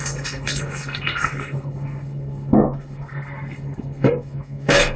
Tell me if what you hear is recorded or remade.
remade